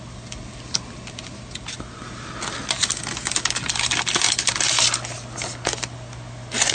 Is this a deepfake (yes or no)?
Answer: no